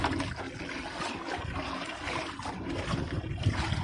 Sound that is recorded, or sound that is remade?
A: recorded